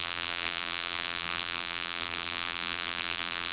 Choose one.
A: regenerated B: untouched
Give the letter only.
A